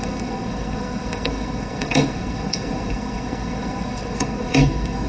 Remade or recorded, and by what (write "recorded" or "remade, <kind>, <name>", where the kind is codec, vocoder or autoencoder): remade, codec, SNAC